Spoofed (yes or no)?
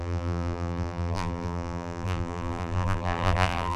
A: yes